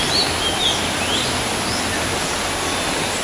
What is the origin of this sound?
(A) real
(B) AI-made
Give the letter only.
A